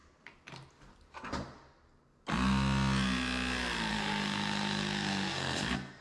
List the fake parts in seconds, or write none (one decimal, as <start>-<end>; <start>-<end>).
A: 3.9-6.0